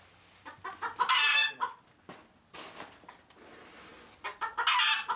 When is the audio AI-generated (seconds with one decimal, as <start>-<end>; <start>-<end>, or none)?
none